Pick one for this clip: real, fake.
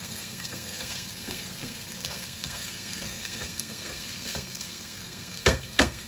fake